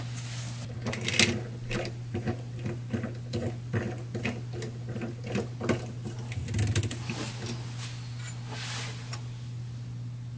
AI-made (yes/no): no